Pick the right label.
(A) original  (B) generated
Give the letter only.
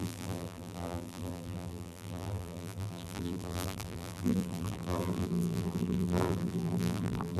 B